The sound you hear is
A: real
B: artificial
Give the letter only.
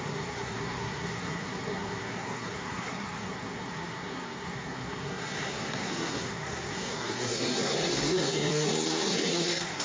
B